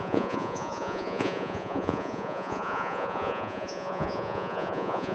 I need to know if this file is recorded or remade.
remade